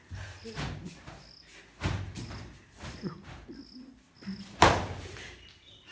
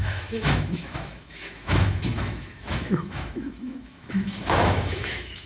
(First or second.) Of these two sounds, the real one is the first